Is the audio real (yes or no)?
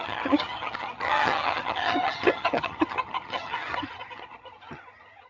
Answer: no